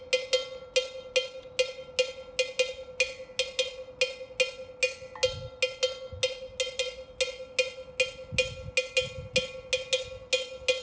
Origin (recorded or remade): recorded